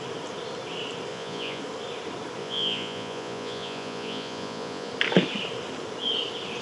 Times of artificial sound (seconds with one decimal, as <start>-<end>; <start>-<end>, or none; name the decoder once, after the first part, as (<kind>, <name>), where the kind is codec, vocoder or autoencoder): 1.1-1.6 (vocoder, Vocos); 2.4-4.9